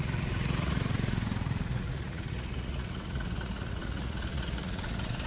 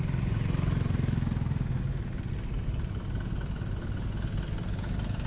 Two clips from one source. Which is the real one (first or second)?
second